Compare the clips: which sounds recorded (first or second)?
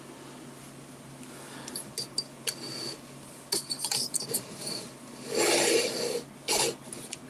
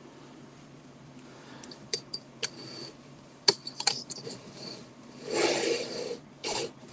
first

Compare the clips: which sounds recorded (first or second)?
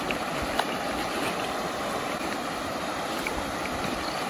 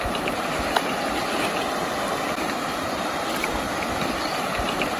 second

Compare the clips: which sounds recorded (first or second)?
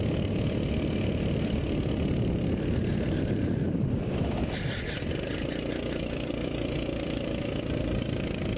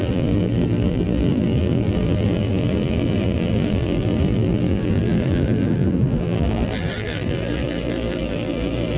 first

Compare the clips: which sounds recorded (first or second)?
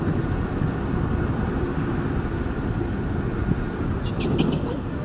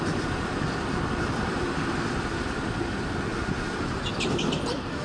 first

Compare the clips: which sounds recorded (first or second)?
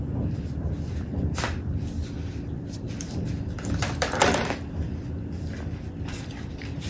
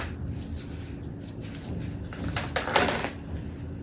second